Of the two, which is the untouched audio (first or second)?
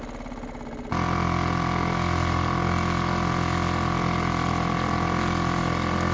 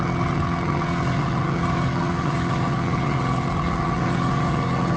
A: first